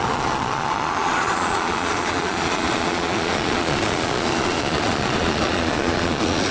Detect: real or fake fake